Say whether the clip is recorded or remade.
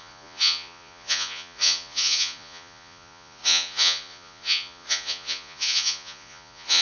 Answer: remade